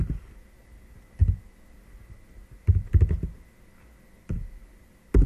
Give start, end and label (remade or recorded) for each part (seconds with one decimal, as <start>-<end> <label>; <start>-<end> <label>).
0.0-5.3 recorded